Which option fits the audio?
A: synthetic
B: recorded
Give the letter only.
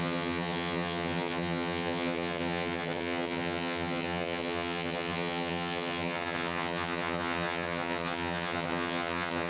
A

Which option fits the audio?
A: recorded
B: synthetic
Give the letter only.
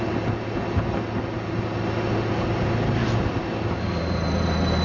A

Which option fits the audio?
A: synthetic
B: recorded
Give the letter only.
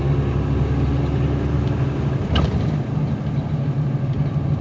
B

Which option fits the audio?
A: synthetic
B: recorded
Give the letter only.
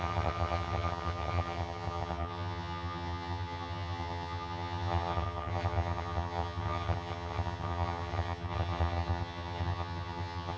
A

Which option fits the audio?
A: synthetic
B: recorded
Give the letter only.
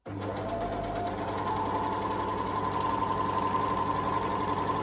B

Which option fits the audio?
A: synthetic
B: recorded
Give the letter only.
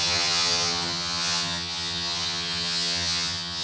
A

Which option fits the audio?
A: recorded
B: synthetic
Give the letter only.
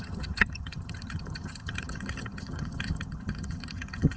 B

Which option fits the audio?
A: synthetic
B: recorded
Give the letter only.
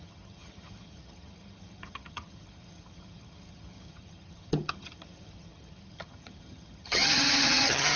A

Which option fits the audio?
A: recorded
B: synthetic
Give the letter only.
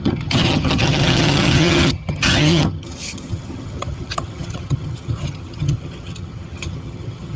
B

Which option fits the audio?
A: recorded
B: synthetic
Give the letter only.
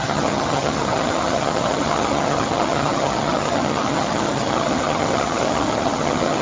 B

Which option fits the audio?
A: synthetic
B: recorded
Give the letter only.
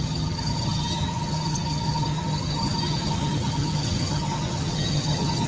A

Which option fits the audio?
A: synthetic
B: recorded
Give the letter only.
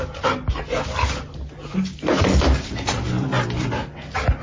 B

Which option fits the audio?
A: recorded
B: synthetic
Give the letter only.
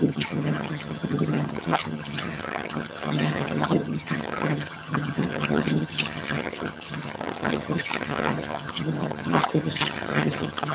B